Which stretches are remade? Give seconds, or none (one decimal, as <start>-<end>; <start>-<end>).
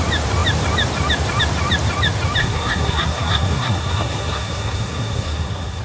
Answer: 2.4-5.8